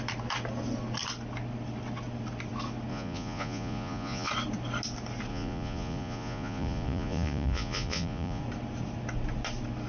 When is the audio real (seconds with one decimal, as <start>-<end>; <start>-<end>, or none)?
0.0-2.9; 4.3-5.3; 8.4-9.9